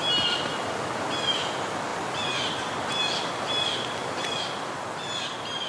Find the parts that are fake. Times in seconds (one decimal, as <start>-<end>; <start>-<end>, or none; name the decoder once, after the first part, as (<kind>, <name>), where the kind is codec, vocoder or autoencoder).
none